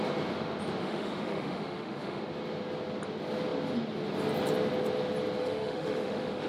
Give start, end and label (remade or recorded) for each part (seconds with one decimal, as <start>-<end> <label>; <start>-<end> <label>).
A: 0.0-0.8 recorded; 0.8-2.2 remade; 2.2-5.4 recorded; 5.4-6.5 remade